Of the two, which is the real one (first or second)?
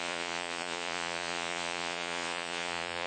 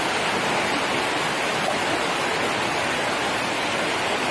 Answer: second